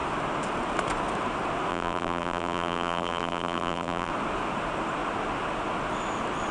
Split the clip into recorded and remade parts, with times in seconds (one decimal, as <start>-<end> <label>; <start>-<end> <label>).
0.0-1.7 recorded; 1.7-4.1 remade; 4.1-6.5 recorded